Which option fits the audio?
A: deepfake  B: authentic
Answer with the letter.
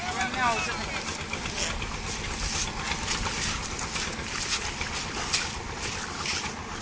B